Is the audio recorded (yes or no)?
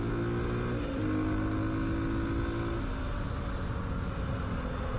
yes